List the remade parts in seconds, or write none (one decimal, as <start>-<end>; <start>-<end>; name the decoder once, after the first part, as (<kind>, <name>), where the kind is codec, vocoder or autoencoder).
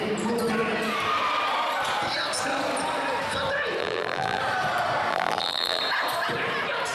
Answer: 3.8-4.4 (vocoder, BigVGAN v2); 5.1-5.8